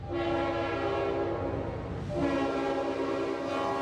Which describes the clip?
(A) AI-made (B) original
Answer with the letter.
B